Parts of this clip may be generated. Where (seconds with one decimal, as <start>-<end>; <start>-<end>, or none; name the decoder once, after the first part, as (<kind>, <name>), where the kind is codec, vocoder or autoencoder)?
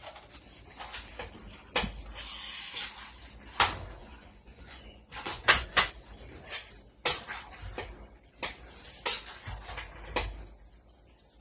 4.0-5.9 (vocoder, Vocos)